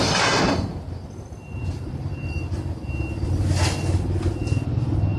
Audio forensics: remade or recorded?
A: recorded